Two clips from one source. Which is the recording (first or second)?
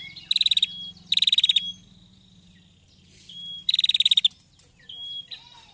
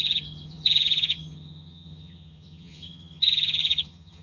first